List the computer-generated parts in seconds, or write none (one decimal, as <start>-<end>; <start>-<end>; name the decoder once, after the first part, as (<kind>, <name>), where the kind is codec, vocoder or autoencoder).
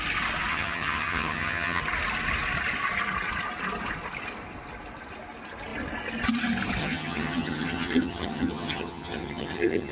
0.5-1.8 (vocoder, HiFi-GAN); 6.8-9.9